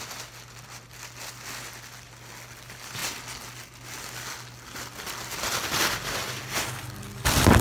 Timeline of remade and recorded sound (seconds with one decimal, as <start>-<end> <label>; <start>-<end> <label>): 0.0-7.6 recorded